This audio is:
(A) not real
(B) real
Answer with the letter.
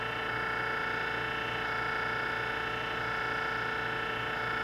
B